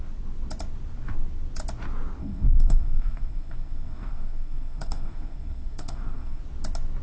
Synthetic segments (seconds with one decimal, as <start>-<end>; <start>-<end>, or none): 2.2-6.4